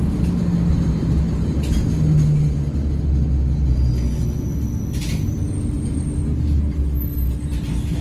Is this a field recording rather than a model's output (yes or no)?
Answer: yes